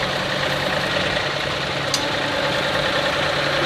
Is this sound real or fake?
real